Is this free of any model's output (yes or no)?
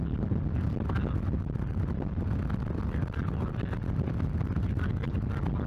no